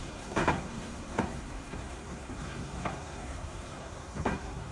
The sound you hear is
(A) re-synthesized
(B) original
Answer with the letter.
A